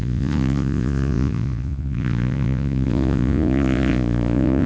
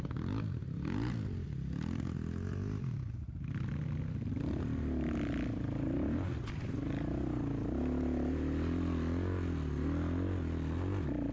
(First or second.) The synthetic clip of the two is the first